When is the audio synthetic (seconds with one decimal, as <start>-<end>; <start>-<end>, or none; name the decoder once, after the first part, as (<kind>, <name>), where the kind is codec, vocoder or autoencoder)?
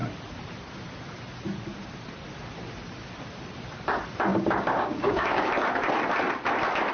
4.3-5.5 (codec, DAC)